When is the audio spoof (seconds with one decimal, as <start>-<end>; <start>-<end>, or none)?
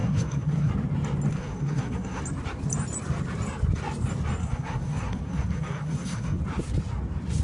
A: 0.0-0.7; 1.3-2.2; 4.4-6.4